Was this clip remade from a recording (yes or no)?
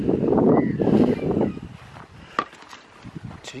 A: no